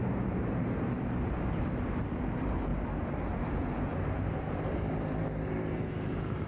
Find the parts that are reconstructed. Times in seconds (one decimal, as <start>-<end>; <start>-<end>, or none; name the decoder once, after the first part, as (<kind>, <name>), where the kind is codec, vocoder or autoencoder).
0.0-2.7 (vocoder, BigVGAN v2); 3.4-6.5